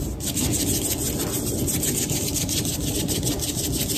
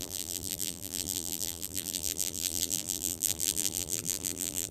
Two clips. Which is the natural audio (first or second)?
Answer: first